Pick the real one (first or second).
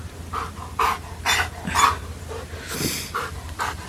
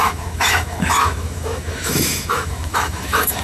first